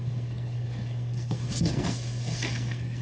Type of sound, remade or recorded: remade